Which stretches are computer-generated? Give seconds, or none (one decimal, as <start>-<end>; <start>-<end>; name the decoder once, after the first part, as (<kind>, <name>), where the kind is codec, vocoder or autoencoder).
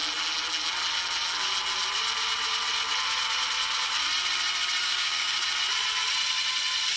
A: 4.8-5.4 (codec, DAC)